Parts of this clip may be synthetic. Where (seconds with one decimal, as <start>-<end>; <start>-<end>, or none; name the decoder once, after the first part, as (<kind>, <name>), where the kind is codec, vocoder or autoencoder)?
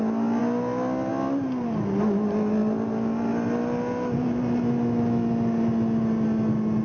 none